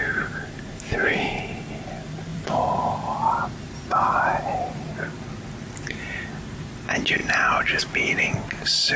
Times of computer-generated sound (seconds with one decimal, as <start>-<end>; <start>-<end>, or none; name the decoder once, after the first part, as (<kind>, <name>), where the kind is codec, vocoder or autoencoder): 2.3-4.9 (vocoder, BigVGAN v2); 7.2-7.8